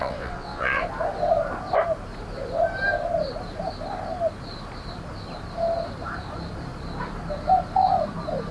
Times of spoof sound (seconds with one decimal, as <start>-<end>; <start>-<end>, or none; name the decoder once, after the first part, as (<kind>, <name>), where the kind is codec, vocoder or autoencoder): 0.0-0.8 (vocoder, WaveNeXt)